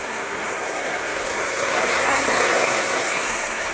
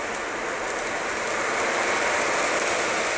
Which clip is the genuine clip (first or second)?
second